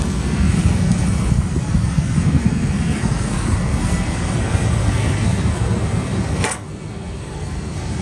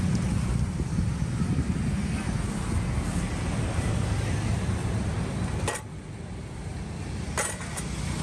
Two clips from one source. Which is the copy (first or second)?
first